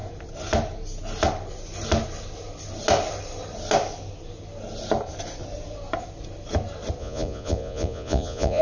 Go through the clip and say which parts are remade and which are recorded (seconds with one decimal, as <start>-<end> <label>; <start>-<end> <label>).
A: 0.0-7.0 recorded; 7.0-8.6 remade